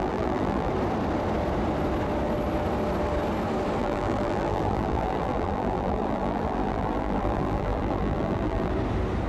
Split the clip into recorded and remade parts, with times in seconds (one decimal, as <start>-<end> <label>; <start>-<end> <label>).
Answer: 0.0-0.7 remade; 0.7-3.8 recorded; 3.8-8.7 remade; 8.7-9.3 recorded